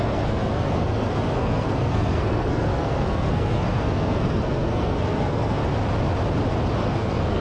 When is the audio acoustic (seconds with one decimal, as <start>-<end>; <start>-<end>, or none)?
5.6-6.8